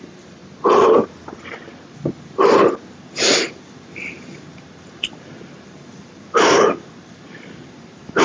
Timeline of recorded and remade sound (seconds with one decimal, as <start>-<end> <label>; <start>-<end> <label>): 0.0-0.4 remade; 0.4-2.9 recorded; 2.9-8.2 remade